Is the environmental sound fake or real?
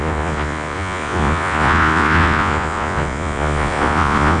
fake